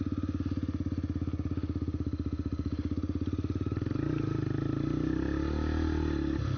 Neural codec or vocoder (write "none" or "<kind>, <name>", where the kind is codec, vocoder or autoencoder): none